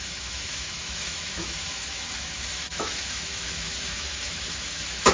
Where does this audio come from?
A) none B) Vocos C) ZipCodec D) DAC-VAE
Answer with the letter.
D